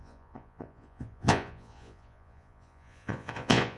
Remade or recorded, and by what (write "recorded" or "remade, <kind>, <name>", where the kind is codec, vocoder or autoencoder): remade, vocoder, Vocos